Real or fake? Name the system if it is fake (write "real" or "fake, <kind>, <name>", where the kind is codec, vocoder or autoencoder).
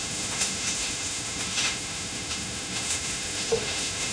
fake, autoencoder, DAC-VAE